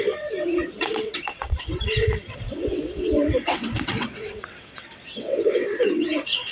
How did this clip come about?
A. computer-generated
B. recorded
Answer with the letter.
A